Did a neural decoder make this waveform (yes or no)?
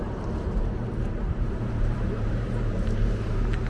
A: yes